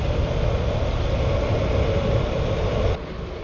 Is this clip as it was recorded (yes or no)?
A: yes